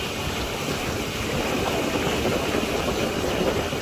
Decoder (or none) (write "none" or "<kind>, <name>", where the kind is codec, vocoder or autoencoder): none